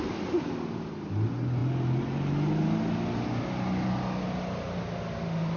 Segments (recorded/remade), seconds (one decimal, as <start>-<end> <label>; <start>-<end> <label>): 0.0-5.6 recorded